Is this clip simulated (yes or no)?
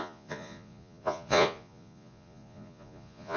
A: yes